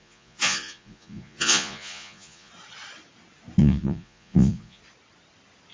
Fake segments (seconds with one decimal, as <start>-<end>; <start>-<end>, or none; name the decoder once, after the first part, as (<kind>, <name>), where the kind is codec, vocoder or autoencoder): 0.0-2.5 (vocoder, Vocos); 3.6-4.8